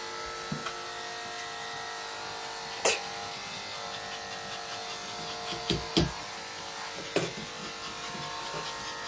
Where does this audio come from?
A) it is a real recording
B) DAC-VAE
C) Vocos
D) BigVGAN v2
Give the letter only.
A